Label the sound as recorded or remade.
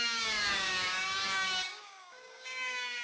remade